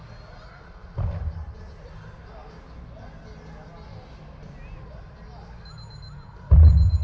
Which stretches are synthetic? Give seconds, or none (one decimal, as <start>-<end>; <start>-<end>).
none